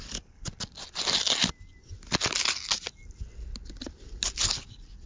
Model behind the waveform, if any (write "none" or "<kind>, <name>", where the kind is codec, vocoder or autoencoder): none